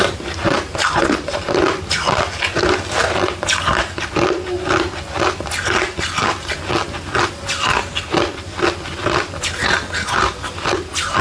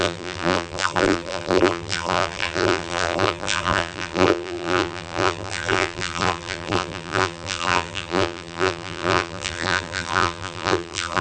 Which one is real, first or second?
first